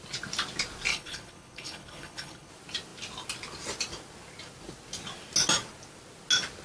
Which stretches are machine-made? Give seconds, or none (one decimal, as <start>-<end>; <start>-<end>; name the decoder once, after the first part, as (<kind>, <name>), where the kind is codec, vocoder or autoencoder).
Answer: 0.9-2.5 (codec, HILCodec)